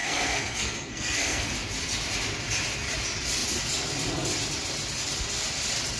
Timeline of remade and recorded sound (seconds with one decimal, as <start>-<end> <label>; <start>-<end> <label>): 0.0-1.5 remade; 1.5-6.0 recorded

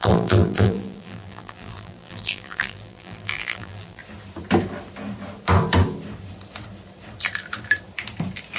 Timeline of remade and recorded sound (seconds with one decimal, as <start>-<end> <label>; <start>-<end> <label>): 0.0-4.0 remade; 4.0-8.6 recorded

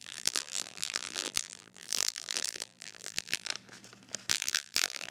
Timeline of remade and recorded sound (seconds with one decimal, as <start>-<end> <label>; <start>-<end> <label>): 0.0-3.5 remade; 3.5-4.3 recorded; 4.3-5.1 remade